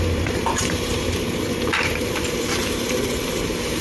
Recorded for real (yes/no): no